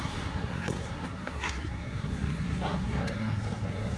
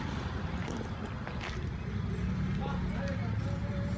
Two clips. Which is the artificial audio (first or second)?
first